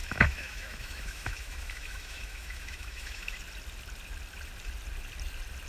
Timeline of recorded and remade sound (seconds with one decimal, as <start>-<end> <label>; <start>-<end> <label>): 0.0-3.4 remade; 3.4-5.7 recorded